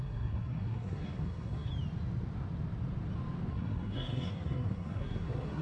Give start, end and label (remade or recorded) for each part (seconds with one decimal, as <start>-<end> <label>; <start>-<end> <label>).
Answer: 0.0-1.7 remade; 1.7-3.5 recorded; 3.5-5.6 remade